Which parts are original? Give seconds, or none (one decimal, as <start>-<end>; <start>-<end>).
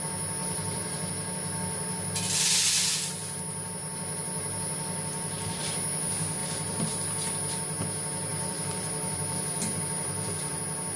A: 0.0-0.4; 1.1-6.4; 6.9-8.3; 10.6-11.0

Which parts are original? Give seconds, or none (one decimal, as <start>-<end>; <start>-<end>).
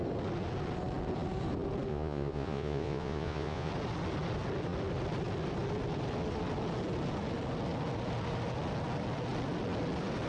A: 0.0-1.9; 3.7-10.3